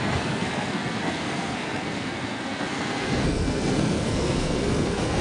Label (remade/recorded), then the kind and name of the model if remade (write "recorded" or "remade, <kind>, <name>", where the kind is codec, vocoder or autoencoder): remade, codec, SNAC